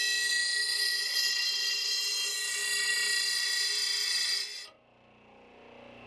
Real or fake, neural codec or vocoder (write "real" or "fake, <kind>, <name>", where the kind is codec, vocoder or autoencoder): real